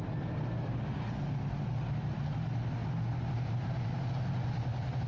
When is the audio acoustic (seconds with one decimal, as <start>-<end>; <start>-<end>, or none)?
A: 0.0-5.1